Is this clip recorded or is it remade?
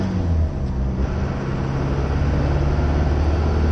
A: recorded